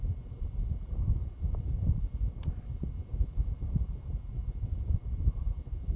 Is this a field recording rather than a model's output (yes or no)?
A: yes